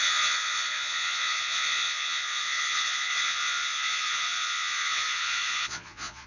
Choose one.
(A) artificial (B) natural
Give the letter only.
A